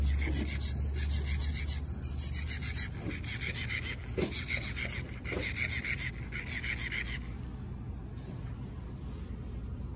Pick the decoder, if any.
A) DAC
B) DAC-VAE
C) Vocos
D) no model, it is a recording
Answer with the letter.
D